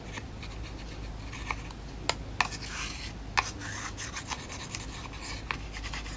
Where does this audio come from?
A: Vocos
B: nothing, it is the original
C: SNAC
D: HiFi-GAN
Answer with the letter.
B